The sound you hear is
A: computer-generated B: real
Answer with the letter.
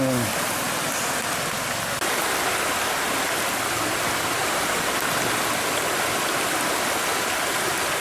B